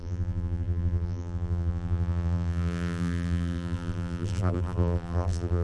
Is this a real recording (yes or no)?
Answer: no